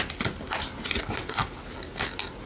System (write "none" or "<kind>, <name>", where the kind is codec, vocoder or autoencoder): none